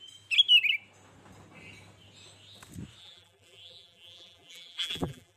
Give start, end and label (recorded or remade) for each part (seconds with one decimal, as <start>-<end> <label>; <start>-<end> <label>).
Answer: 0.0-3.0 recorded; 3.0-5.4 remade